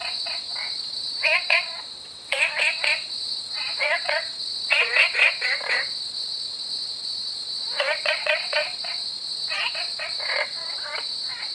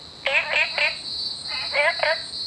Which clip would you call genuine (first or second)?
second